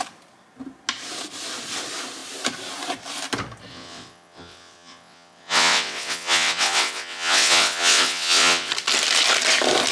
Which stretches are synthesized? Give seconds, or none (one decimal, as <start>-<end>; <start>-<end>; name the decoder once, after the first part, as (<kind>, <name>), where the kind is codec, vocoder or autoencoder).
3.7-8.7 (vocoder, WaveNeXt)

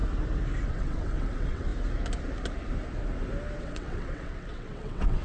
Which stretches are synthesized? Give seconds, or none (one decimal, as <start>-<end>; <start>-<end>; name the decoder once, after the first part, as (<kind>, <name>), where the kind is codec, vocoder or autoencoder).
0.7-1.7 (vocoder, WaveNeXt); 3.6-5.2

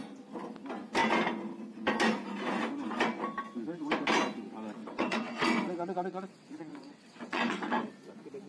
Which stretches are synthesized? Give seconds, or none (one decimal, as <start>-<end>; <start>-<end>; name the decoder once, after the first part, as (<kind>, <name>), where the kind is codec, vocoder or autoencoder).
4.8-7.9 (vocoder, WaveNeXt)